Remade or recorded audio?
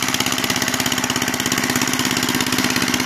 recorded